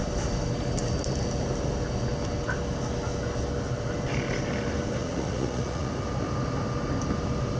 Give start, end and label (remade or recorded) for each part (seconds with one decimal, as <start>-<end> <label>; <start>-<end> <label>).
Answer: 0.0-5.0 recorded; 5.0-5.9 remade; 5.9-7.6 recorded